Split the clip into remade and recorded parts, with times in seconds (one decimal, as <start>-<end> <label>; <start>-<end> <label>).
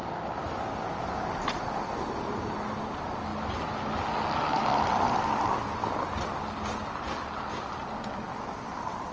0.0-9.1 recorded